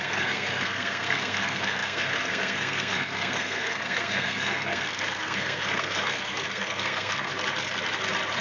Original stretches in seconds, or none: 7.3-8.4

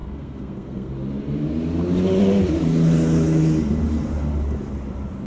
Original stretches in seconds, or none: 0.9-5.3